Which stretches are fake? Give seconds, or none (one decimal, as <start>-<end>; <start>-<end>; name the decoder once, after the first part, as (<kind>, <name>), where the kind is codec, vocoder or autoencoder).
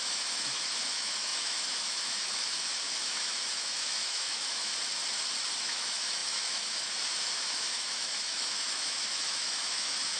0.0-4.7 (autoencoder, DAC-VAE); 5.6-10.2